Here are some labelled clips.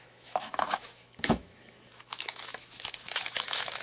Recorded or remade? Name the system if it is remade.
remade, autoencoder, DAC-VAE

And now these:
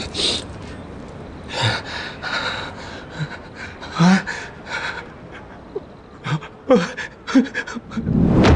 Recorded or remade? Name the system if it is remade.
recorded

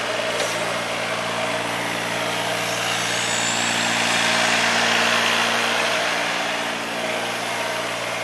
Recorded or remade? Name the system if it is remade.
recorded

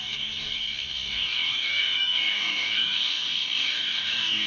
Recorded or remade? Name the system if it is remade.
remade, codec, DAC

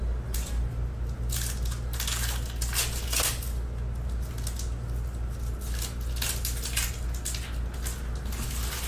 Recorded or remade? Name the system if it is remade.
recorded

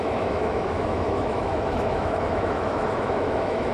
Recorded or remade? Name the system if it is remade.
remade, autoencoder, DAC-VAE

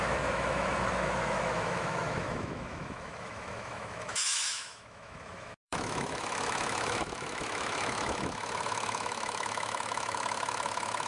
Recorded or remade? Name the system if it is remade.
remade, autoencoder, DAC-VAE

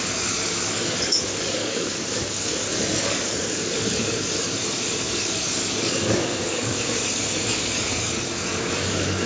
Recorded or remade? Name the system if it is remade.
remade, codec, DAC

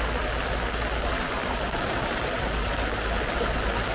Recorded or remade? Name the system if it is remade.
recorded